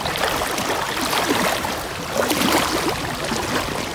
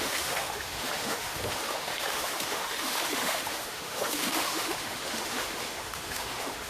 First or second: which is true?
first